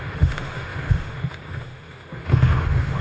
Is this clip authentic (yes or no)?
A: no